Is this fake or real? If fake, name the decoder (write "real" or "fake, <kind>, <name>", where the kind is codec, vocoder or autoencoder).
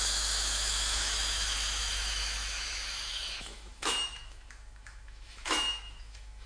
fake, autoencoder, DAC-VAE